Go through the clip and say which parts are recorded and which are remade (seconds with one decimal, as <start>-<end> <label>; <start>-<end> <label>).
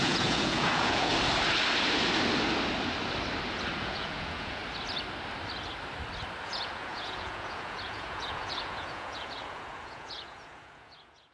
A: 0.0-1.1 remade; 1.1-3.8 recorded; 3.8-4.6 remade; 4.6-6.4 recorded; 6.4-11.3 remade